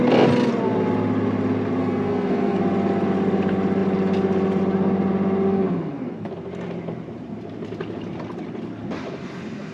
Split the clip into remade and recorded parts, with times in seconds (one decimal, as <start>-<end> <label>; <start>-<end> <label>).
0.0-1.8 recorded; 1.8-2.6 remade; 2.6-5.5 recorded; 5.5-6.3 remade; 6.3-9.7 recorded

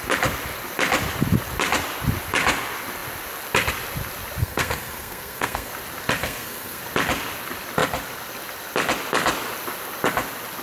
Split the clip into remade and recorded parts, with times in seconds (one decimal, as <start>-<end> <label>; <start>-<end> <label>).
0.0-4.4 recorded; 4.4-5.7 remade; 5.7-6.2 recorded; 6.2-6.8 remade; 6.8-10.6 recorded

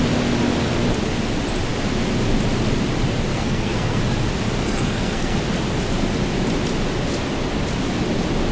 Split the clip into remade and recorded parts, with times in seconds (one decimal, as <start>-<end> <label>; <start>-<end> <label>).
0.0-3.3 recorded; 3.3-4.0 remade; 4.0-4.6 recorded; 4.6-5.4 remade; 5.4-8.5 recorded

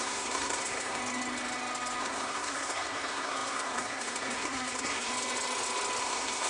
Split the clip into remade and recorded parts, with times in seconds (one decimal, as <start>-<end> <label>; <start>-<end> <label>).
0.0-1.0 remade; 1.0-2.0 recorded; 2.0-5.1 remade; 5.1-6.0 recorded; 6.0-6.5 remade

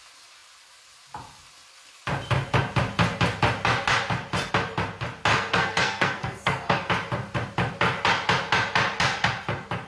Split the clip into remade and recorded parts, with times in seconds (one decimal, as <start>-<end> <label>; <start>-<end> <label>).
0.0-5.3 recorded; 5.3-6.9 remade; 6.9-9.9 recorded

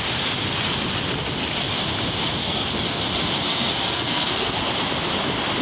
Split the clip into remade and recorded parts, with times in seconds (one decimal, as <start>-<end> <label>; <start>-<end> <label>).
0.0-2.4 recorded; 2.4-3.0 remade; 3.0-3.5 recorded; 3.5-4.6 remade; 4.6-5.6 recorded